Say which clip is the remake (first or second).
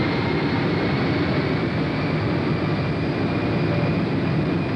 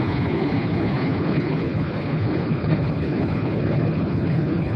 second